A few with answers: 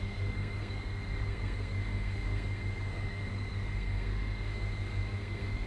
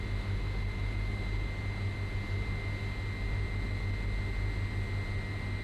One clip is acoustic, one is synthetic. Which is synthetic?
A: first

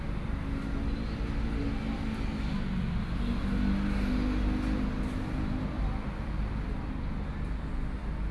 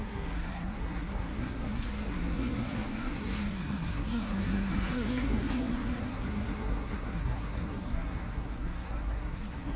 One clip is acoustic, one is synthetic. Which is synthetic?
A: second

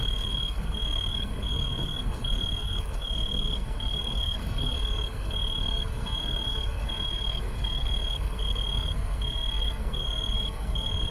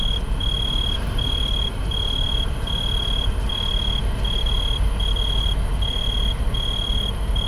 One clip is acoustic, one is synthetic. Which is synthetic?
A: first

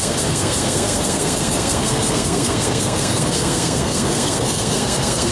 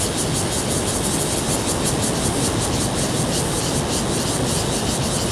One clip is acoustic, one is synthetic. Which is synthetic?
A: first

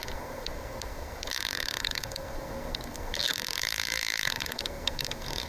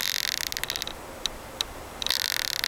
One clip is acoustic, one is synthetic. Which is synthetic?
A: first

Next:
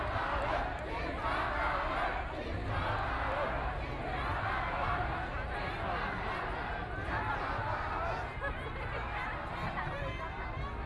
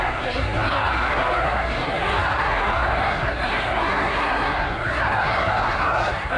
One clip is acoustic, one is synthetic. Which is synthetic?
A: second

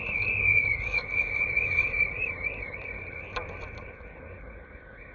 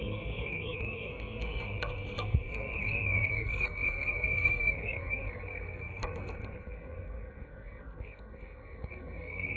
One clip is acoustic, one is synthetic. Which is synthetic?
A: second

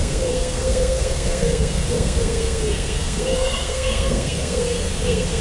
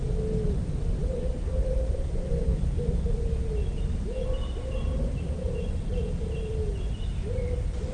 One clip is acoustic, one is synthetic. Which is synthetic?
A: first